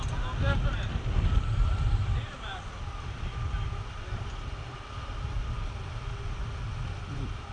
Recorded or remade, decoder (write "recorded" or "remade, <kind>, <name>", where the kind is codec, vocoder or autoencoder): recorded